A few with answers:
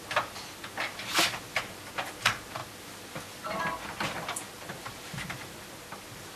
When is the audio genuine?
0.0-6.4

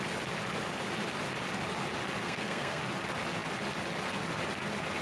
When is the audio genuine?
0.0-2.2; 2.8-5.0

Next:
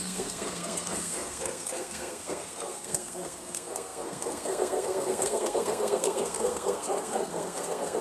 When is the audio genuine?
none